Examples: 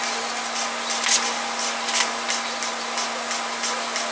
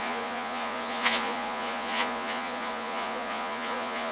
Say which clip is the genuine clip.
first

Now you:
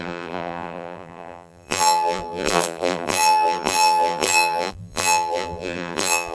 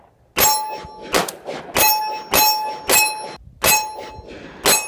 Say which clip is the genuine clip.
second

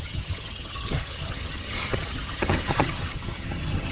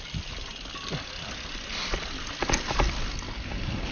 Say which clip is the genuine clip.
second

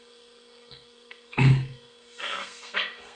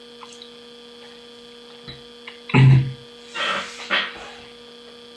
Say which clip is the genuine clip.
second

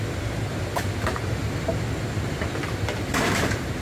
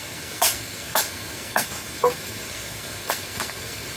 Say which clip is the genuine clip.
first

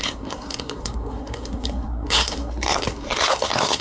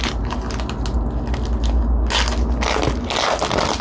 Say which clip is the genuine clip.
second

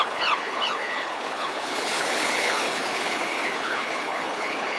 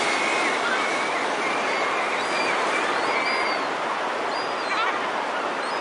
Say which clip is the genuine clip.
second